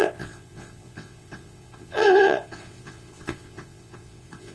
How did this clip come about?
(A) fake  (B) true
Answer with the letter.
A